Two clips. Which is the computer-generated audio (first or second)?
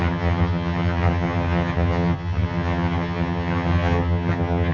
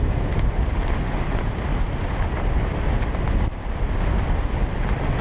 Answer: first